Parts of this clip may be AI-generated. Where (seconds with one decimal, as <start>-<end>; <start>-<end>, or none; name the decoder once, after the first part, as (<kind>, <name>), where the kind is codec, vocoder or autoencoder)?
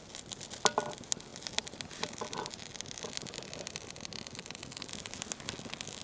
none